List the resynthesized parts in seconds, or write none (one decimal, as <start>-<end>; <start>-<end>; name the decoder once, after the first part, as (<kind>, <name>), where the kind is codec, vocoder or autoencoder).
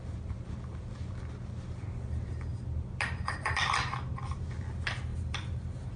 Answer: none